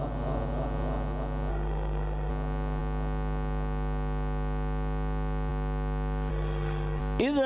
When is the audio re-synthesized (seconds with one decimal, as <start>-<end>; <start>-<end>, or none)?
1.5-2.3; 6.3-7.0